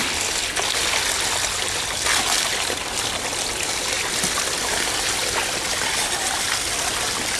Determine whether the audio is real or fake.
real